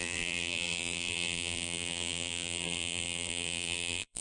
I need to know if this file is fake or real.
fake